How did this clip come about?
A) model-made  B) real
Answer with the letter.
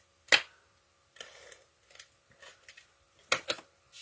B